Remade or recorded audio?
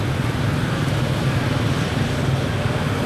recorded